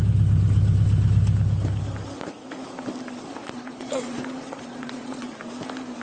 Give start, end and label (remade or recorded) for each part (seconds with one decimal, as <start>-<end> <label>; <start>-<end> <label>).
0.0-3.4 recorded; 3.4-5.3 remade; 5.3-6.0 recorded